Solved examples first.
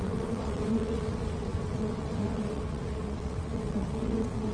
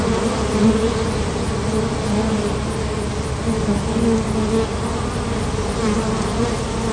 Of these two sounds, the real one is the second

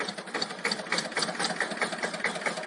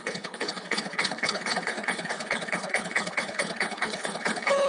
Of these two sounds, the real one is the first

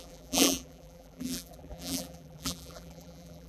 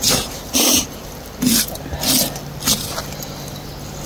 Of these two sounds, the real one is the second